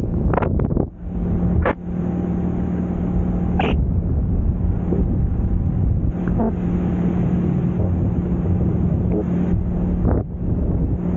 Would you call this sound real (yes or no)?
yes